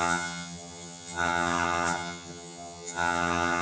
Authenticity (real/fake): fake